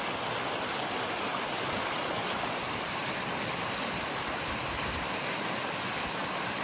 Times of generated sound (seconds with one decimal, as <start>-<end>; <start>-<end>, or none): 1.3-5.1